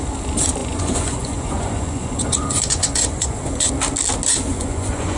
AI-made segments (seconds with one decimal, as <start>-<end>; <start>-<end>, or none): 0.6-3.7; 4.5-5.2